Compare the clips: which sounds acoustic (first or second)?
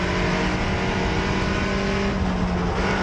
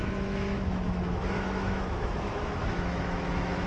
first